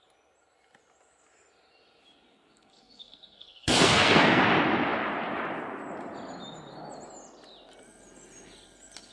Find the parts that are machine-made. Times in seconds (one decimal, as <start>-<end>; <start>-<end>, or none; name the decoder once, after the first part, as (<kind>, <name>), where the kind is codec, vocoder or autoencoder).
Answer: 2.3-4.4 (codec, SNAC)